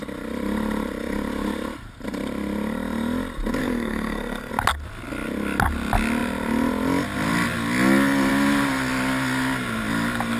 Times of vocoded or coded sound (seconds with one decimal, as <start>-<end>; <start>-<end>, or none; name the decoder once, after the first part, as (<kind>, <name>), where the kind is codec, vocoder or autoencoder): 3.6-4.5 (codec, SNAC)